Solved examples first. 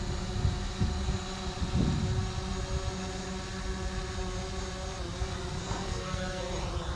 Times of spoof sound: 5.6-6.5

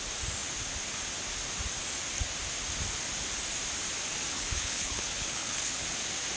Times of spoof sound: 4.3-6.0

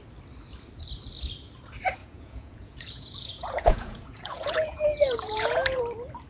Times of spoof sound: 2.0-5.8

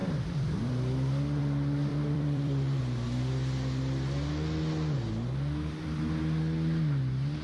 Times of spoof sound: 0.0-1.4; 1.9-2.8

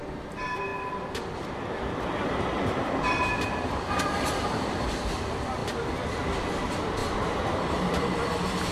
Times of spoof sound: 5.6-6.1; 7.0-8.7

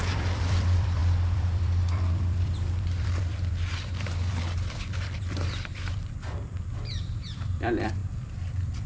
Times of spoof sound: 0.0-8.9

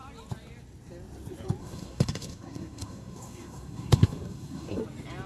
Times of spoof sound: 1.6-4.8

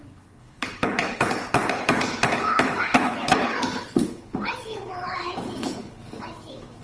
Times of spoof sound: 0.0-6.8